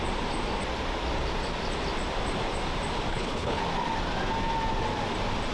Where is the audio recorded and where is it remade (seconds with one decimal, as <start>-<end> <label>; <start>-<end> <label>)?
0.0-3.1 recorded; 3.1-3.6 remade; 3.6-5.5 recorded